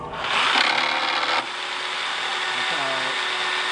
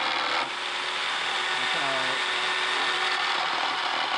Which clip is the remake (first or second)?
second